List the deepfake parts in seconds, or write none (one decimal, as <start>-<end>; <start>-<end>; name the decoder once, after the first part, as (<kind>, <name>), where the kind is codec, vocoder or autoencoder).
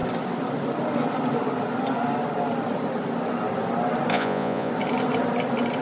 4.1-4.7 (vocoder, Vocos)